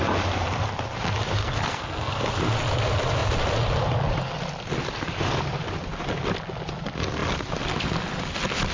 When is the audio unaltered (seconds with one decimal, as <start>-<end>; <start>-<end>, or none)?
0.0-1.4; 2.1-8.7